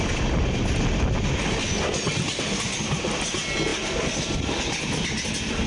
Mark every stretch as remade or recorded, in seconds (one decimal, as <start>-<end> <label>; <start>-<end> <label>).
0.0-5.7 recorded